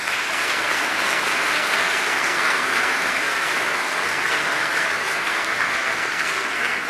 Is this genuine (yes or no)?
no